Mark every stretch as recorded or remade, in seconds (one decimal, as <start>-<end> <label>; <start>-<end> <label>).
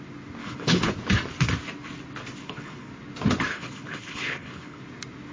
0.0-0.4 recorded; 0.4-0.9 remade; 0.9-2.4 recorded; 2.4-2.9 remade; 2.9-3.5 recorded; 3.5-4.8 remade; 4.8-5.3 recorded